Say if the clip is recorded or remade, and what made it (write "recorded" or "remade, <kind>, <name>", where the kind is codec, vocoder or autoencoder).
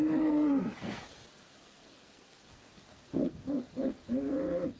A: remade, codec, SNAC